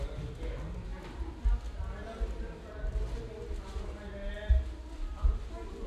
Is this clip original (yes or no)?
yes